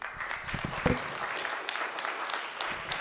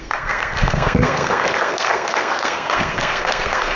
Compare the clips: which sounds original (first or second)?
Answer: first